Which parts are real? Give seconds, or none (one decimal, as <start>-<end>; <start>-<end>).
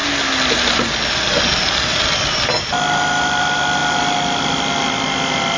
0.0-5.6